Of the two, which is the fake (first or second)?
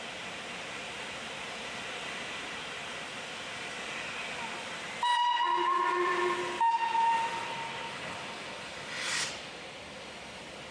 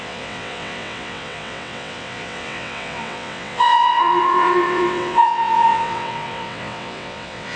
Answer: second